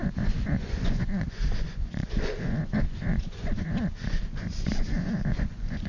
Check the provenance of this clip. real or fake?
fake